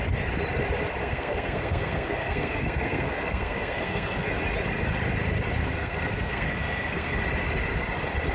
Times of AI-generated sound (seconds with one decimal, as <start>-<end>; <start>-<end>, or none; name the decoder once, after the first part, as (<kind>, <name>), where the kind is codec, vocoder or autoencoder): 1.0-4.3 (codec, SNAC); 5.6-7.2